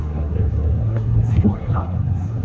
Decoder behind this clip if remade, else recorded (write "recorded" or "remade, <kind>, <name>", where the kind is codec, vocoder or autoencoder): remade, codec, SNAC